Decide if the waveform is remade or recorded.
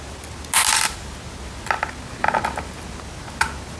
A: recorded